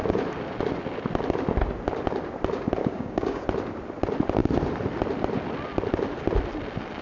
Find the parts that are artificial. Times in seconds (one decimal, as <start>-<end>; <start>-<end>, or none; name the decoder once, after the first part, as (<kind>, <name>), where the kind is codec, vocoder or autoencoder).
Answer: 2.8-3.4 (codec, DAC)